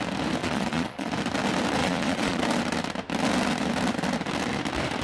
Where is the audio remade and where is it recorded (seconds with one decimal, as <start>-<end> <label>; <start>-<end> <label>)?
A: 0.0-0.4 recorded; 0.4-1.1 remade; 1.1-1.8 recorded; 1.8-2.4 remade; 2.4-5.0 recorded